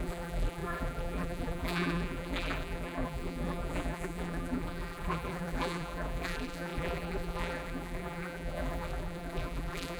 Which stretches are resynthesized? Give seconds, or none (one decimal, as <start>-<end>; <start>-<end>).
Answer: 0.0-10.0